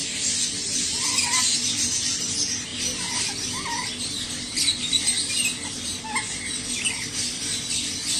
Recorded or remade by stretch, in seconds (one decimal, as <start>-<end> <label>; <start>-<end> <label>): 0.0-8.2 recorded